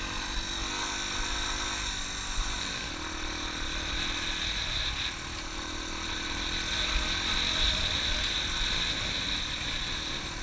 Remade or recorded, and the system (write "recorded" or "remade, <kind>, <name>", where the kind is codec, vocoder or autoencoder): recorded